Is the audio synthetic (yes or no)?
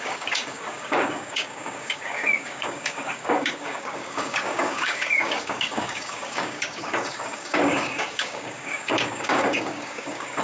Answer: yes